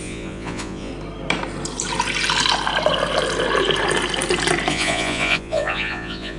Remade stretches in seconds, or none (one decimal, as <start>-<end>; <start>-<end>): 0.0-0.9; 4.7-6.4

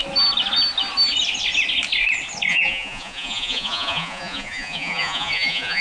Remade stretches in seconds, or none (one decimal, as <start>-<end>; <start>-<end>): 2.5-5.8

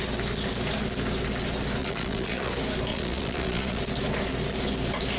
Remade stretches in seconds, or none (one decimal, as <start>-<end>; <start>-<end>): 1.8-2.5; 2.9-3.8

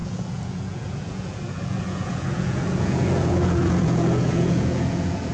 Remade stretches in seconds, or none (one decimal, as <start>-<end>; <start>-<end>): 0.0-5.3

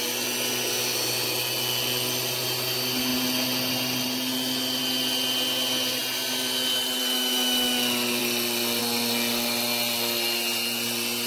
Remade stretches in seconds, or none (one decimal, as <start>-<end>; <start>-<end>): none

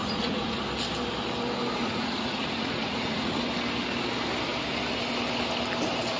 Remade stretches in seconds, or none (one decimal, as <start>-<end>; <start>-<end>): 0.0-0.6; 1.8-3.4

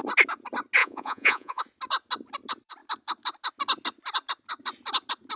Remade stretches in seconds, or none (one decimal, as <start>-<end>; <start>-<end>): 0.8-1.6